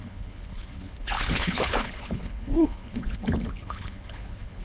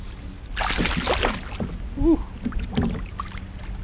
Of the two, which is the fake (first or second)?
first